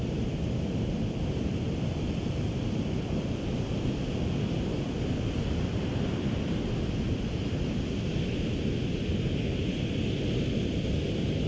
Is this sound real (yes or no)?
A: yes